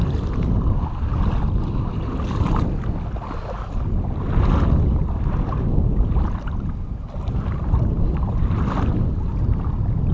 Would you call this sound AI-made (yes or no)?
no